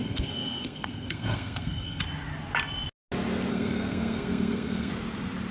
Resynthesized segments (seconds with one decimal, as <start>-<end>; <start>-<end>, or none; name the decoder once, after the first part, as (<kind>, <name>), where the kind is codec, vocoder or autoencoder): 0.0-2.0 (codec, SNAC); 3.5-4.9